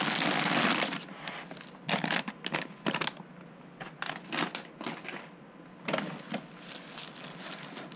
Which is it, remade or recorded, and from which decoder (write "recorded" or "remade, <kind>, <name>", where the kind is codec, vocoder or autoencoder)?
recorded